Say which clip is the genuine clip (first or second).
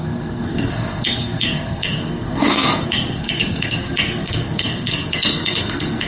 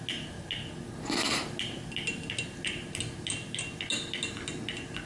second